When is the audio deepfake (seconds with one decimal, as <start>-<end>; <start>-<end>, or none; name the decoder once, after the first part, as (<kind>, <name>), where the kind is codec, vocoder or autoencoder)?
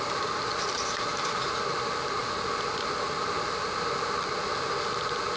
none